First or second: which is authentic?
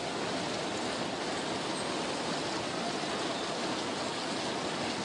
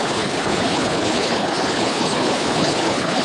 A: first